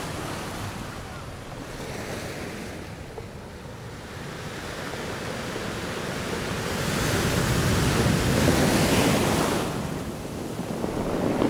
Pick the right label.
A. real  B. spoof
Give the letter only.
A